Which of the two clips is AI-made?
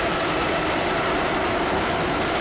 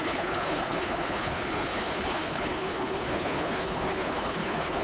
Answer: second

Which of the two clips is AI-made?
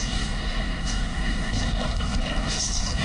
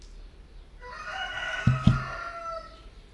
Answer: first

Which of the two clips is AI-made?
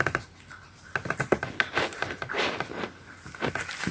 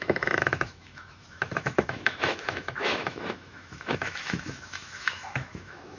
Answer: second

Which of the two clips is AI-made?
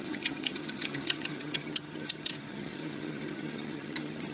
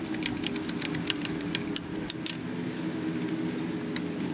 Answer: first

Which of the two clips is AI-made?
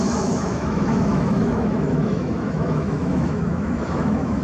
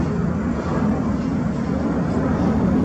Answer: first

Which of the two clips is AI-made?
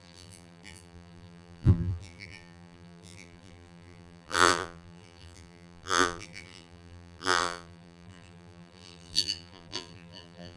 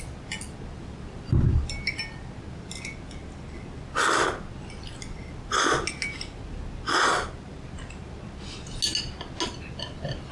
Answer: first